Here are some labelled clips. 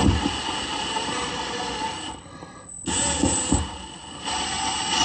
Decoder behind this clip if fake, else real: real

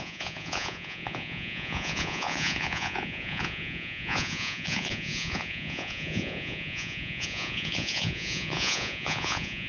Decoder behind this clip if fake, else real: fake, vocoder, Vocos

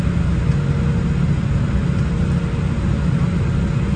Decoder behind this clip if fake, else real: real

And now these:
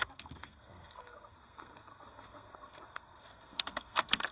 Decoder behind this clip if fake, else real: fake, codec, SNAC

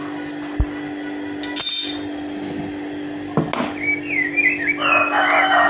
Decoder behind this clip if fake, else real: real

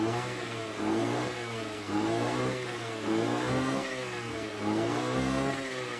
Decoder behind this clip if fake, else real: fake, codec, SNAC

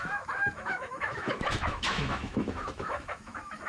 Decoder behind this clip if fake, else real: fake, autoencoder, DAC-VAE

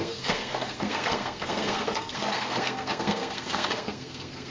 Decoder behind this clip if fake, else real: fake, codec, SNAC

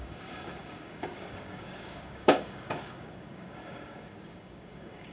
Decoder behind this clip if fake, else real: fake, codec, DAC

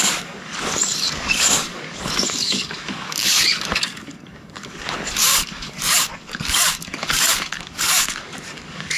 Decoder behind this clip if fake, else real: fake, codec, DAC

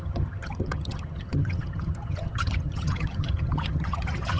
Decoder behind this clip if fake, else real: fake, vocoder, HiFi-GAN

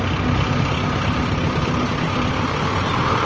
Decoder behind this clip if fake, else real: real